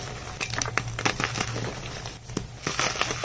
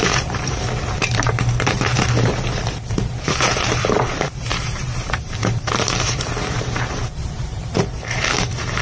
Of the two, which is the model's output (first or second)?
second